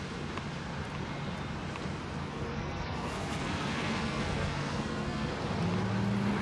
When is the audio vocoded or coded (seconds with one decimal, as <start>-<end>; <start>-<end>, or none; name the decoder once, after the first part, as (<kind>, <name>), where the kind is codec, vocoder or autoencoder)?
2.2-5.3 (codec, SNAC)